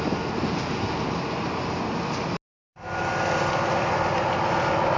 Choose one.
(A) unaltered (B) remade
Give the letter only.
A